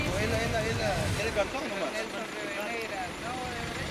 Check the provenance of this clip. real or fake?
real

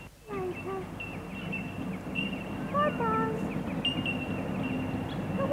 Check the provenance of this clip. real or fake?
real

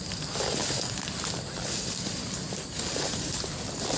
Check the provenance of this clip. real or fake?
real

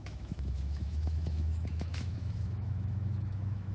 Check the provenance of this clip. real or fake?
fake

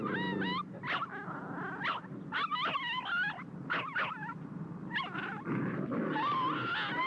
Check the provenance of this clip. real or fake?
real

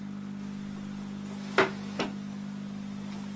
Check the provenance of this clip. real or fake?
real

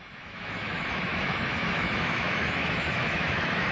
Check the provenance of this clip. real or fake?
fake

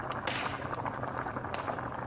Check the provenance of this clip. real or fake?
real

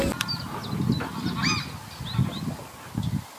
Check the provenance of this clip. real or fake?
real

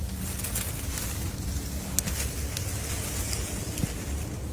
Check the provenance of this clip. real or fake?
real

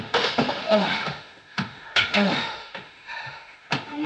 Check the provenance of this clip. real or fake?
fake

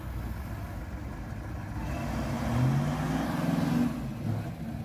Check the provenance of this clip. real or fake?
real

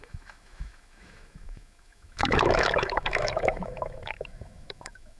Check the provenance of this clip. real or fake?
fake